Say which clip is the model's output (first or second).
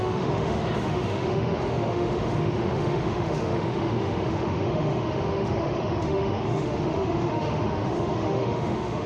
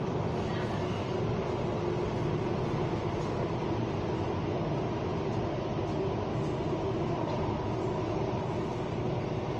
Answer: first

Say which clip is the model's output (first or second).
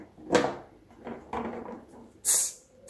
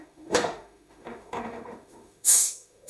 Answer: second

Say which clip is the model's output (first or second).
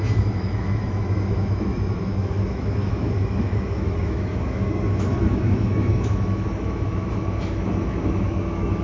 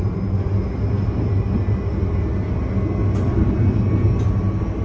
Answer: first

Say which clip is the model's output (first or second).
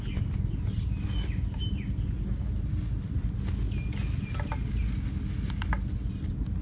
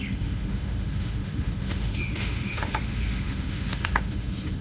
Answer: second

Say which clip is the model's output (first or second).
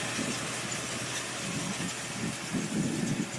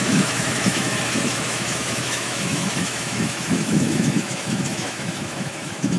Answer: second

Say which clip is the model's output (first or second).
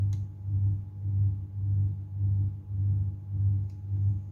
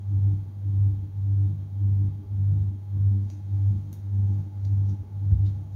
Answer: second